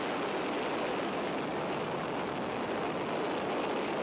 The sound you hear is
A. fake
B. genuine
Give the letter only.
B